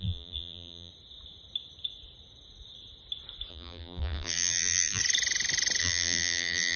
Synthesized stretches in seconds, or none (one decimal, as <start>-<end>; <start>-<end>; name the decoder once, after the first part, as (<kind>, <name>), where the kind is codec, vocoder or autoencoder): 0.0-0.9 (vocoder, BigVGAN v2); 3.5-5.0; 5.8-6.8